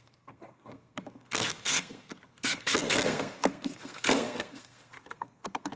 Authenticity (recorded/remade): remade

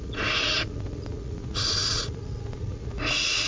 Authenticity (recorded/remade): remade